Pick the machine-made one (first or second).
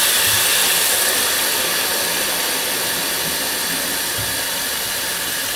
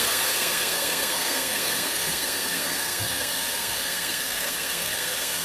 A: second